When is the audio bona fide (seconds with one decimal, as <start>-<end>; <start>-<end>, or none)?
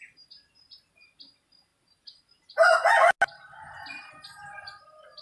0.0-5.2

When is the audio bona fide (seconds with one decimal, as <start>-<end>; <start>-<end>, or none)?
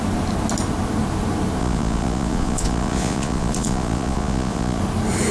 0.0-1.6; 4.8-5.3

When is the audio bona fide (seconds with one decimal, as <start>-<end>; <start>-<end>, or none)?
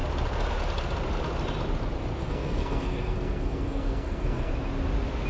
0.0-2.2; 4.5-5.3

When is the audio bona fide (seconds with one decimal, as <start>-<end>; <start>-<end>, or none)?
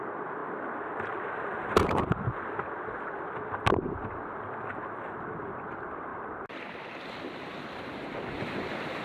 0.0-9.0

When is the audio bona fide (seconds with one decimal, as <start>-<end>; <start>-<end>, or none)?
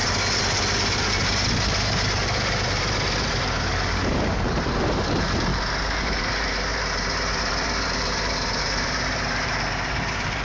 0.0-1.1; 5.5-6.0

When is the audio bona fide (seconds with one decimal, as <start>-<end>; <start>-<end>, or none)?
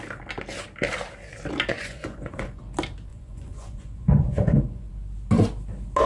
0.0-1.7; 2.6-3.1; 4.9-6.1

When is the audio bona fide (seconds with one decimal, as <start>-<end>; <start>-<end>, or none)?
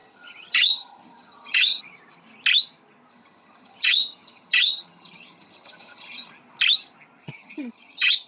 1.8-3.1; 6.3-7.2